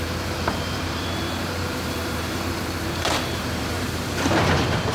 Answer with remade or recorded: remade